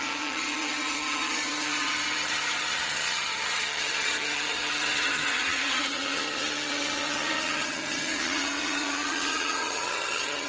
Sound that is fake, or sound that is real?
fake